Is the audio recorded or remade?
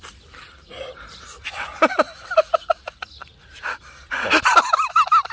recorded